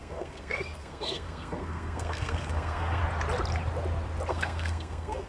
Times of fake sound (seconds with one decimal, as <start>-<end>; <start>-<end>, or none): 0.0-3.0; 4.3-5.3